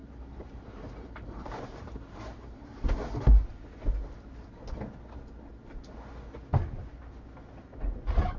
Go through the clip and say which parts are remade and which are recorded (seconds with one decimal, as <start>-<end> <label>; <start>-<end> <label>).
0.0-2.9 remade; 2.9-8.4 recorded